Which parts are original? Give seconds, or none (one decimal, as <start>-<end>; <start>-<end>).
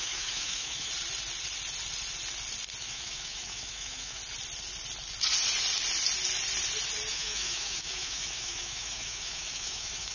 0.9-2.8; 4.2-7.1